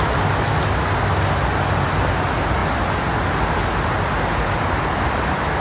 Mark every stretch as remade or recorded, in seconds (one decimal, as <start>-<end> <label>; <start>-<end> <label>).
0.0-5.6 recorded